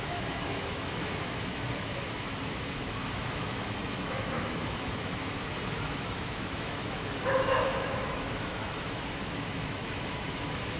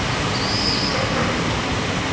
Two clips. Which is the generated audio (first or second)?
first